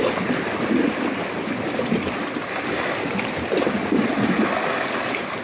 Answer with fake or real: real